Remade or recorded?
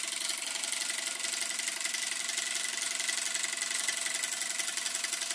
recorded